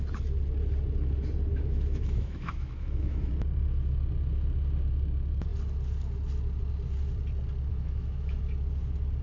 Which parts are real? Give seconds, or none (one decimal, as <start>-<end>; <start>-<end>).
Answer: 0.0-1.5; 3.3-7.7; 8.4-9.2